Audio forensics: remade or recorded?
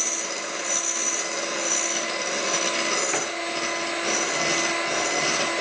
recorded